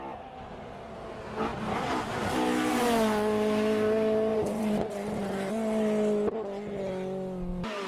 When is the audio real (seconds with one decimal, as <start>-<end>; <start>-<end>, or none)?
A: 0.0-1.5; 2.1-4.3; 5.5-7.9